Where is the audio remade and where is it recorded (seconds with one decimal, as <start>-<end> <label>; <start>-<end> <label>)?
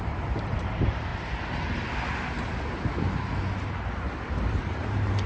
0.0-1.1 remade; 1.1-4.3 recorded; 4.3-5.3 remade